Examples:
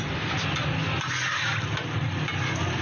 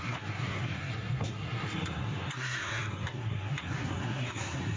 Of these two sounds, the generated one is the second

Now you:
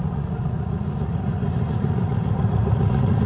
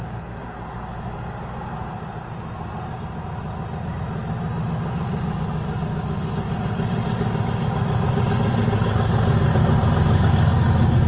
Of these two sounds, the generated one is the first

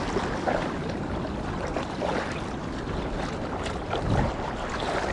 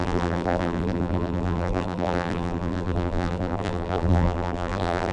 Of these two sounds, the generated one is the second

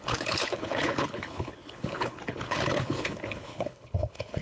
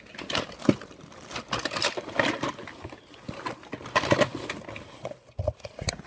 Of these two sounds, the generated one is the first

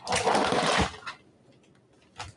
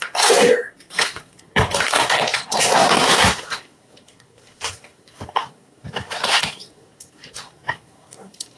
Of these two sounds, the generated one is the second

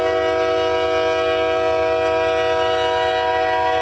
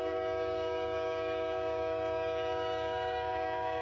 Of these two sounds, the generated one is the second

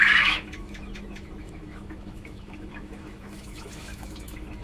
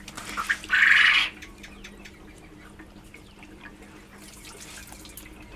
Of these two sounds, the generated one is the first